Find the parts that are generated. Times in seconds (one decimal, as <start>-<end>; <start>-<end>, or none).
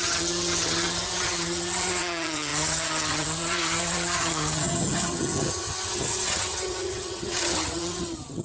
0.0-8.4